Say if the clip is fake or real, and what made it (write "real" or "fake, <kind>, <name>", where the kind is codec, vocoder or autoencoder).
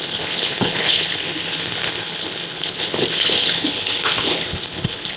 fake, codec, HILCodec